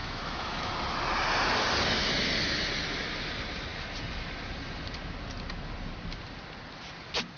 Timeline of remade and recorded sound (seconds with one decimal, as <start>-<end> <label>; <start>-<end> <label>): 0.0-0.7 remade; 0.7-7.4 recorded